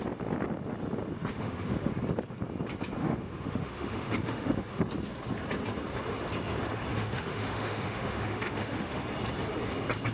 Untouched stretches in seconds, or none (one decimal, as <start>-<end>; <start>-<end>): 0.0-1.3; 1.9-3.0; 4.8-6.9; 9.0-10.1